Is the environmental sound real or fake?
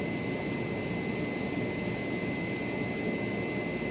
real